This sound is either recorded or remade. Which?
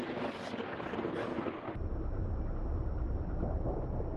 recorded